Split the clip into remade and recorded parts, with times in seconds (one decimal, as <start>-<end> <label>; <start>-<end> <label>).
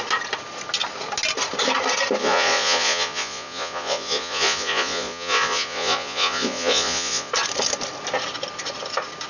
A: 0.0-2.2 recorded; 2.2-7.3 remade; 7.3-9.3 recorded